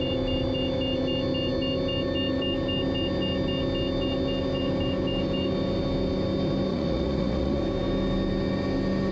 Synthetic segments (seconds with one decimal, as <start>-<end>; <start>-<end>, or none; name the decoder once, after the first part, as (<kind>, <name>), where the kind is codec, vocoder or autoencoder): 6.7-7.6 (vocoder, Vocos)

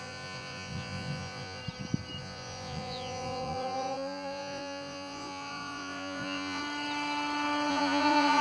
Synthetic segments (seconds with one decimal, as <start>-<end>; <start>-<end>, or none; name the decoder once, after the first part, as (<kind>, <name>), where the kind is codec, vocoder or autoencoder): 0.0-1.6 (vocoder, Vocos); 2.2-6.6; 7.7-8.4

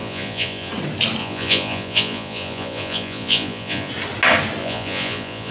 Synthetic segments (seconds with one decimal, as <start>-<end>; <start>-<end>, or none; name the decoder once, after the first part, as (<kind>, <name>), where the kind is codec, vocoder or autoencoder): 0.0-0.7 (vocoder, Vocos); 1.2-3.9; 4.6-5.5

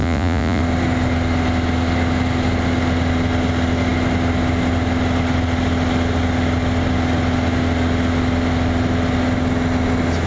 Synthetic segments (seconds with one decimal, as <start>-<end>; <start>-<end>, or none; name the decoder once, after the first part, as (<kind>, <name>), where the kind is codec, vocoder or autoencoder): 0.0-0.6 (vocoder, Vocos)

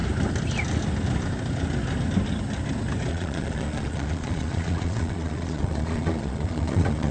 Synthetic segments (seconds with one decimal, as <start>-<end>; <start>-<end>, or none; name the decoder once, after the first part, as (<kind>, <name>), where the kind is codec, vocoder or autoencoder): 3.1-7.1 (vocoder, Vocos)